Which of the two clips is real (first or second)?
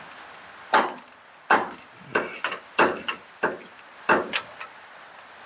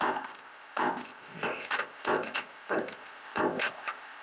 first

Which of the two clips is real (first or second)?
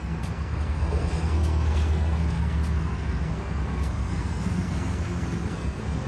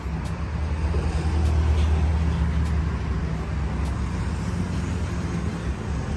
second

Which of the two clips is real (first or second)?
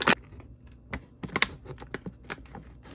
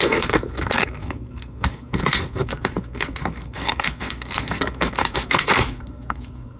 first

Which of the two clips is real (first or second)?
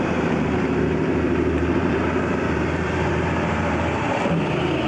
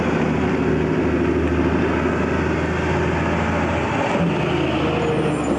second